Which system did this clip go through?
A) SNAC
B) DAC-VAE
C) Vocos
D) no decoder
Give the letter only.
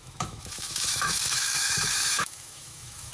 B